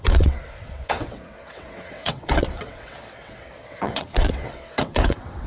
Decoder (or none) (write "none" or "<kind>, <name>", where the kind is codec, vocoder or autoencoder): vocoder, WaveNeXt